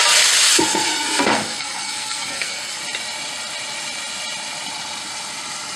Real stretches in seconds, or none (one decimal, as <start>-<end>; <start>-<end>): 0.0-0.5; 2.8-5.8